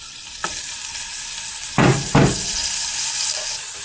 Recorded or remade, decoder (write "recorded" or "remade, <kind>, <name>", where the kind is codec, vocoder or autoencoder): recorded